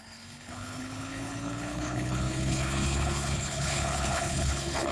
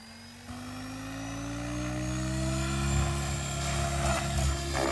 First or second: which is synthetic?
first